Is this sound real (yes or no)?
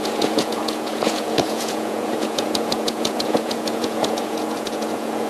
no